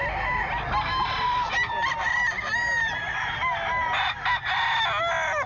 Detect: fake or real real